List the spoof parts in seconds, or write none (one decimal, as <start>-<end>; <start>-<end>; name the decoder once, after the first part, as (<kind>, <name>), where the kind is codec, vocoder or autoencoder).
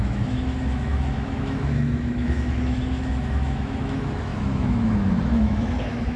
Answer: 0.0-6.2 (autoencoder, DAC-VAE)